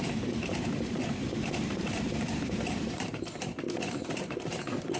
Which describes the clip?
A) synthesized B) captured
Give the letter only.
A